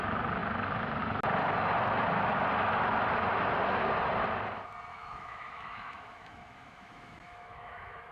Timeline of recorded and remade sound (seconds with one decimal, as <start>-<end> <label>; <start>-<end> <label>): 0.0-4.9 recorded; 4.9-8.1 remade